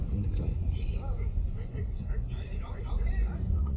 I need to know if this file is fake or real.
fake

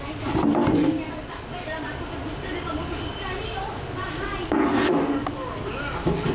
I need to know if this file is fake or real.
real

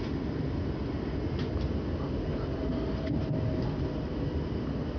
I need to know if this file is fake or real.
real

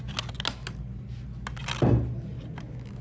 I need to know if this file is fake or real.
real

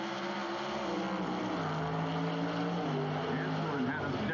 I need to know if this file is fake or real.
real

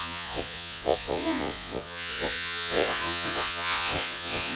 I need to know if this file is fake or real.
fake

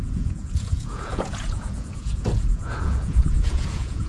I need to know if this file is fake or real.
fake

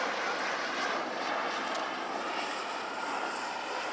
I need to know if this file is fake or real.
real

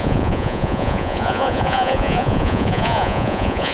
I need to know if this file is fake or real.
fake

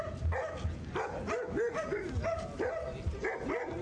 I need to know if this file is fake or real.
real